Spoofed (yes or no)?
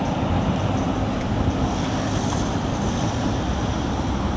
no